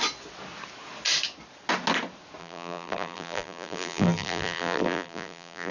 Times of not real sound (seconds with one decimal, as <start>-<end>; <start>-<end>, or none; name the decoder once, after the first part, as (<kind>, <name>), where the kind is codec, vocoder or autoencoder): 2.4-5.7 (vocoder, BigVGAN v2)